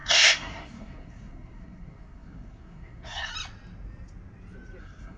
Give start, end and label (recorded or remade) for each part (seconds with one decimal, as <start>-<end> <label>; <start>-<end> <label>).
0.0-3.3 remade; 3.3-4.8 recorded; 4.8-5.2 remade